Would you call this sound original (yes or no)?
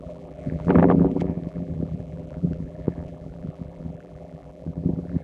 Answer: no